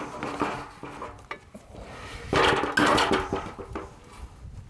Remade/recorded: recorded